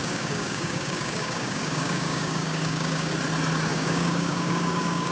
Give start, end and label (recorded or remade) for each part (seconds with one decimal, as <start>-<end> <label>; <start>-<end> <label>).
0.0-3.1 remade; 3.1-3.7 recorded; 3.7-5.1 remade